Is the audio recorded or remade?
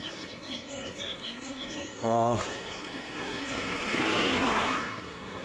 remade